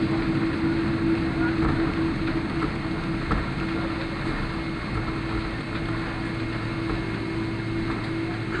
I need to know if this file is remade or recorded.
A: recorded